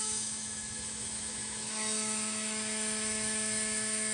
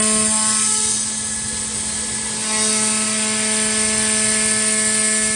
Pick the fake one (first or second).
first